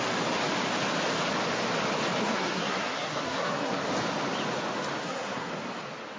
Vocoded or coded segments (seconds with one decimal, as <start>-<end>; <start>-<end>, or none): 2.2-3.8; 5.0-5.5